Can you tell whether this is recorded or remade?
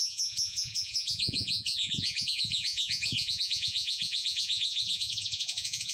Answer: remade